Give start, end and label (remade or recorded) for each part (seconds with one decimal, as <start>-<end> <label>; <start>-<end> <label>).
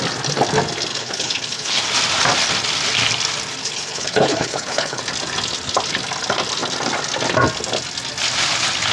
0.0-0.9 recorded; 0.9-1.8 remade; 1.8-3.6 recorded; 3.6-5.0 remade; 5.0-8.9 recorded